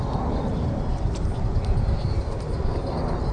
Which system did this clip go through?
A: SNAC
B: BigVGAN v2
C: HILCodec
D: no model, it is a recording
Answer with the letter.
D